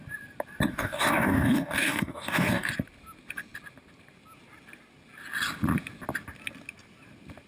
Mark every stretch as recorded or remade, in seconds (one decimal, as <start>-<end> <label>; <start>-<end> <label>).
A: 0.0-0.7 recorded; 0.7-2.7 remade; 2.7-7.5 recorded